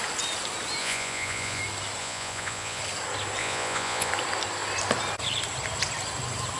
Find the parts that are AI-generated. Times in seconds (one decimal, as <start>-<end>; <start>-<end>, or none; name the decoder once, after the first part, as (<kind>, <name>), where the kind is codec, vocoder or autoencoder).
0.8-1.6 (vocoder, Vocos); 2.0-2.8; 3.4-4.1